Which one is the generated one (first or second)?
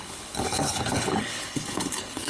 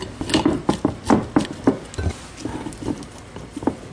first